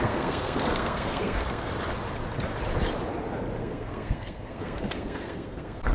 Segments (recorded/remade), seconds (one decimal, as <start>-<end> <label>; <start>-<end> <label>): 0.0-1.7 remade; 1.7-3.6 recorded; 3.6-5.9 remade